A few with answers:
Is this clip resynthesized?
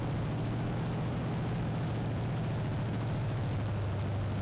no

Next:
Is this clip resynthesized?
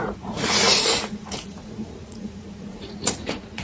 yes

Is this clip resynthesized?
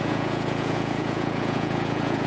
yes